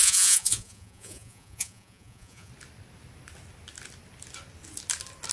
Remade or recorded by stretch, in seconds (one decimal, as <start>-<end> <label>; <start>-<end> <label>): 0.0-2.5 remade; 2.5-5.3 recorded